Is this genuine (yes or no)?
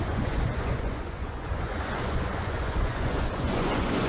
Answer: no